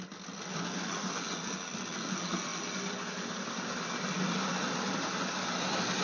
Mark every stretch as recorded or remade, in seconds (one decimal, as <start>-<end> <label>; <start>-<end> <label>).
0.0-6.0 recorded